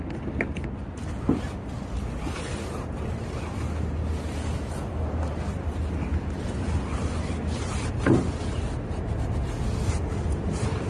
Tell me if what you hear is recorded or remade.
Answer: recorded